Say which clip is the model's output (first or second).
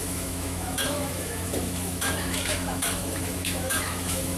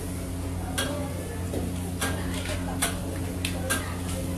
first